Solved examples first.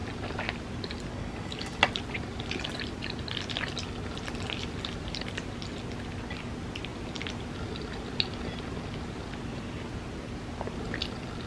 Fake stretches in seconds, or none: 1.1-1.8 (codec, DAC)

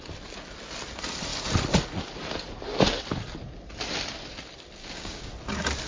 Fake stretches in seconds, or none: 4.8-5.3 (codec, DAC)

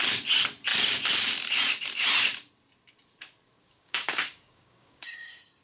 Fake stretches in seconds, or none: 3.6-5.6 (codec, DAC)

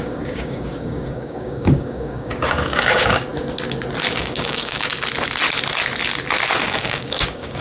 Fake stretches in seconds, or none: 0.0-3.3 (codec, DAC); 4.1-4.9; 6.6-7.6

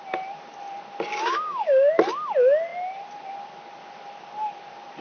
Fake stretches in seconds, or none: 1.1-1.9 (codec, DAC)

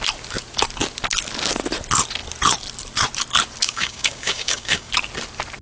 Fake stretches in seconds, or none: 3.6-4.9 (codec, DAC)

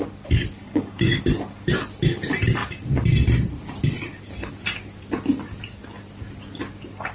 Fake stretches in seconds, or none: 0.6-1.2 (codec, DAC)